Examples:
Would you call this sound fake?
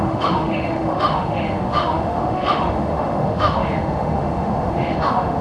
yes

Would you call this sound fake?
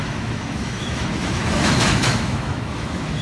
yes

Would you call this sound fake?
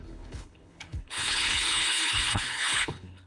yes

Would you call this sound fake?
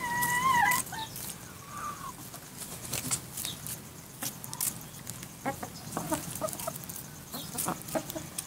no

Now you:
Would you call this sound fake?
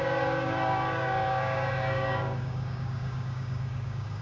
yes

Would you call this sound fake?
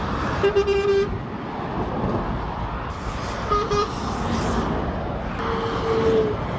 no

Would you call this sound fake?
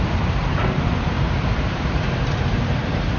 yes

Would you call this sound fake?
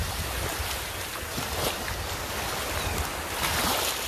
no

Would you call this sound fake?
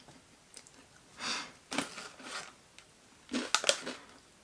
no